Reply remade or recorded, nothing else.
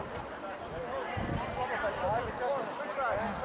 recorded